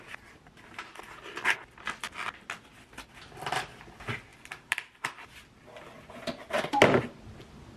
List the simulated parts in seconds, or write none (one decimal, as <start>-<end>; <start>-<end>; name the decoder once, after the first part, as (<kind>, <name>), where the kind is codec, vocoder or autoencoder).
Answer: none